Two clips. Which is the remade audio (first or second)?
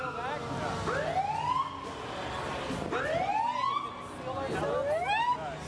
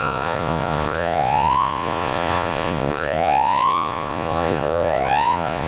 second